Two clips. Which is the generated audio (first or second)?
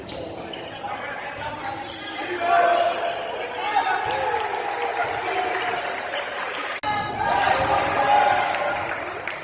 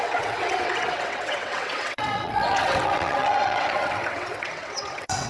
second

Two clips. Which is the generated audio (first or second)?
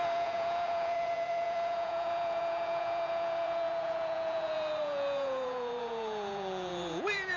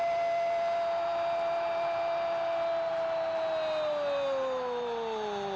first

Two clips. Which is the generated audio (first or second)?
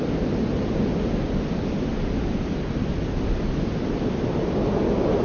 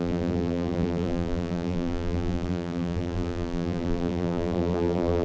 second